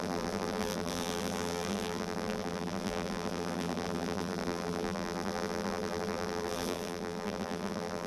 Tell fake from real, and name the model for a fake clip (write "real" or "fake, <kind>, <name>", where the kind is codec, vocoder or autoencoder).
fake, vocoder, BigVGAN v2